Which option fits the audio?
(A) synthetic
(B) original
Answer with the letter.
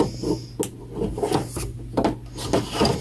B